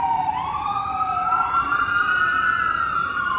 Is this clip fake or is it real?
fake